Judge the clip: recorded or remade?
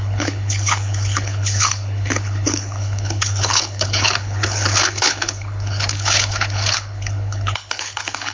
remade